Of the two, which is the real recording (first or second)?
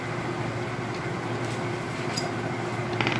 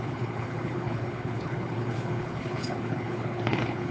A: first